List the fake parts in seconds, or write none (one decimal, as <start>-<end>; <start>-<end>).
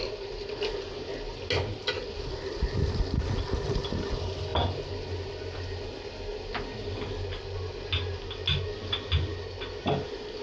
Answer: none